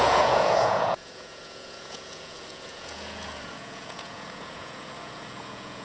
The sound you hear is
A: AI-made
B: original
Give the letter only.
A